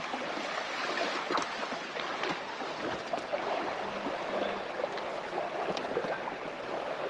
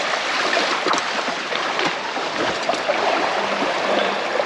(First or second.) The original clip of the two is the first